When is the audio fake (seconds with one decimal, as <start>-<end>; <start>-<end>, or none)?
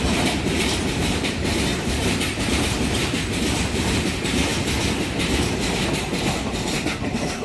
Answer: 0.0-4.5; 6.5-7.4